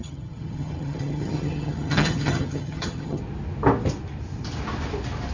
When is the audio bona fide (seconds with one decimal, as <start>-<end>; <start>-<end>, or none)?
3.2-5.3